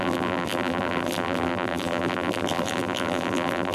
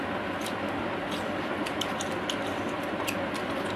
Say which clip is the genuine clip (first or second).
second